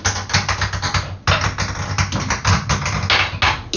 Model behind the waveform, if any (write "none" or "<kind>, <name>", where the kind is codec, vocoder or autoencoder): none